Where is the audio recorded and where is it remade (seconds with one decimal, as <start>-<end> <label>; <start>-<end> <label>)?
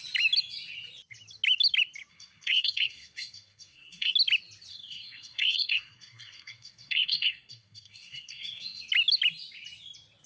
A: 0.0-2.1 recorded; 2.1-4.1 remade; 4.1-4.7 recorded; 4.7-8.8 remade; 8.8-10.3 recorded